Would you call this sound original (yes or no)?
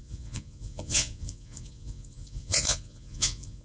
no